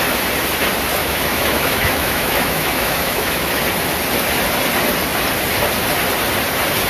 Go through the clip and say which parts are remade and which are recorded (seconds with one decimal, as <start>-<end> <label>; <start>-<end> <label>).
0.0-1.0 recorded; 1.0-3.6 remade; 3.6-6.9 recorded